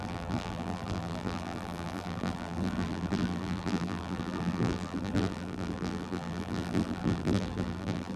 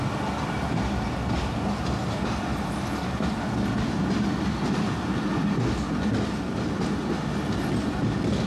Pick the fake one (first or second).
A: first